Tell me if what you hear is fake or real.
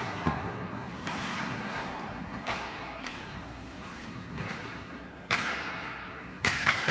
fake